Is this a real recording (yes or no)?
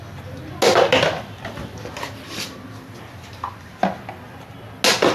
yes